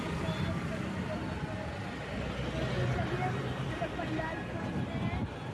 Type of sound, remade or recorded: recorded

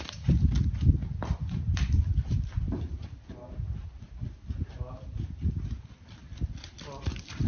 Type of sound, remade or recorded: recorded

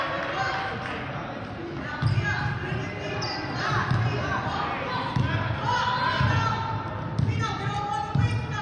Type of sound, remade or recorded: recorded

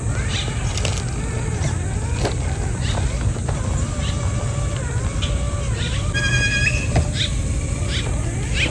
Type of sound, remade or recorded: recorded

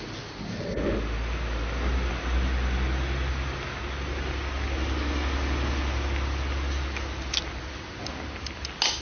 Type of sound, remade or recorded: recorded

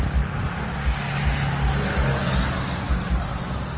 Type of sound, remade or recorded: recorded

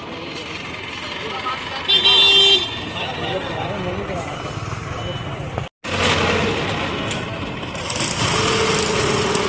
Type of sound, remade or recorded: recorded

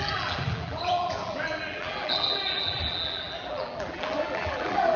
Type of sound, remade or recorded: remade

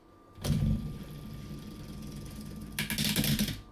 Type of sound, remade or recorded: recorded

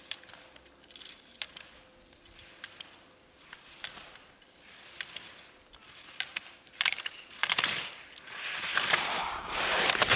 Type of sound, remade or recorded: recorded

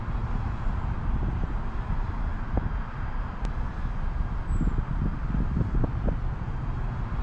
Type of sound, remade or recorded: recorded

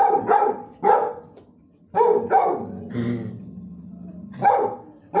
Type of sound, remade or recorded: recorded